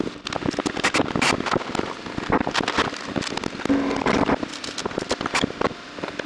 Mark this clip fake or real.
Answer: real